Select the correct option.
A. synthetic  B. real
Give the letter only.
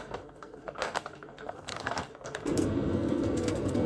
A